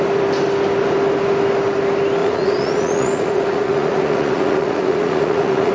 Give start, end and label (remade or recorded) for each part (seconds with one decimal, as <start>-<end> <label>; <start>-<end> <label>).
0.0-2.2 recorded; 2.2-5.7 remade